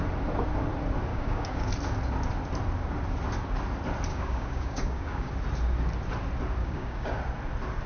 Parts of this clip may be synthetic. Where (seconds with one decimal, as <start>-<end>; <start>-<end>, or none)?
1.1-1.7; 4.1-5.3; 6.6-7.2

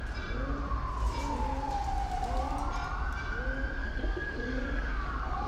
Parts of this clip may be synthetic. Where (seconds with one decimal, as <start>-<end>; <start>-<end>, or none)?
3.8-5.5